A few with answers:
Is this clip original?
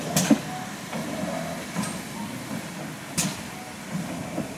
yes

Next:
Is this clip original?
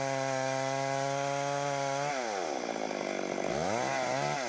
yes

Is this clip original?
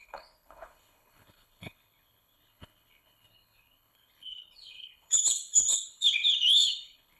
no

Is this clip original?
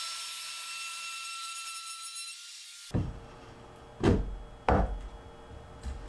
yes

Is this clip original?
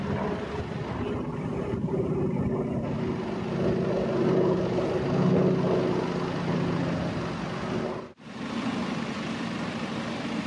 yes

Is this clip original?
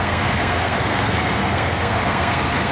no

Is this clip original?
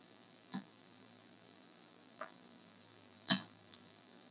no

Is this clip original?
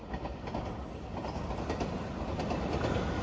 yes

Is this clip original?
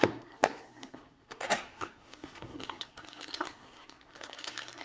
no